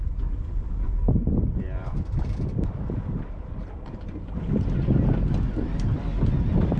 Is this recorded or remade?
recorded